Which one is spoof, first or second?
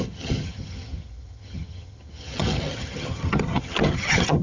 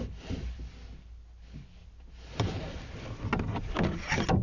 first